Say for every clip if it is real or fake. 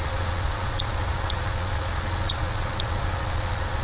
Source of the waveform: fake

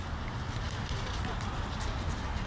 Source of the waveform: real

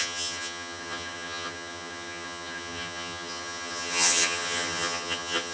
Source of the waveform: fake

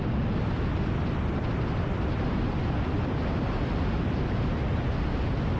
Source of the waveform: real